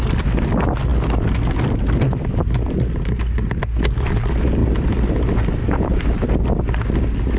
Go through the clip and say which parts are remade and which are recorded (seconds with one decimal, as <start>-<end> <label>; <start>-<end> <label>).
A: 0.0-5.6 recorded; 5.6-6.3 remade; 6.3-7.4 recorded